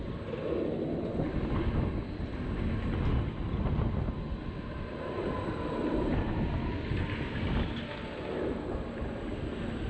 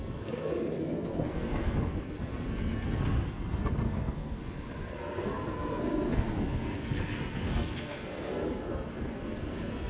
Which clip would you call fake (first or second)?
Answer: second